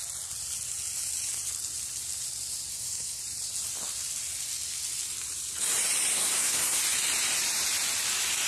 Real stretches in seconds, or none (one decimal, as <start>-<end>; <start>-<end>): 0.0-2.7; 3.2-6.1; 6.8-8.5